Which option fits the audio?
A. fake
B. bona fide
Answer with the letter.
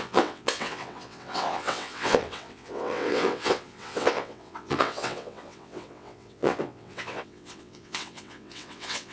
A